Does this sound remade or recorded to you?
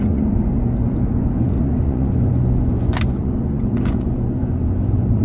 remade